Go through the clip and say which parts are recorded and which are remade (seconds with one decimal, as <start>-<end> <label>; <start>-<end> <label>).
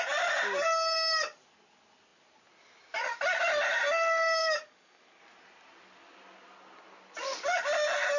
0.0-4.4 recorded; 4.4-5.2 remade; 5.2-8.2 recorded